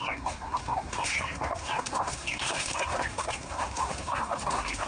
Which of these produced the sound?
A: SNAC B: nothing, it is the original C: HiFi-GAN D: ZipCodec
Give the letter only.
A